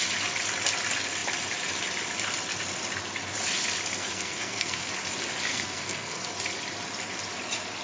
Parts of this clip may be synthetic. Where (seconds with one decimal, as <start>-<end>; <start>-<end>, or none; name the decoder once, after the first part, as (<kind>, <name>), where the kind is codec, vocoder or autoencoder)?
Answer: 4.0-4.9 (codec, SNAC); 5.5-6.4